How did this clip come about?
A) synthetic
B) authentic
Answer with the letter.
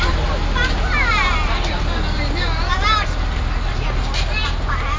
B